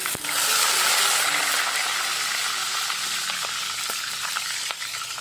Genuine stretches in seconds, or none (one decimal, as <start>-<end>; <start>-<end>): 0.0-0.5; 2.6-4.1